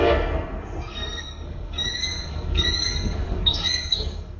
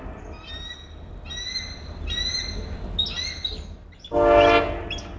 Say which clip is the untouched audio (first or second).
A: second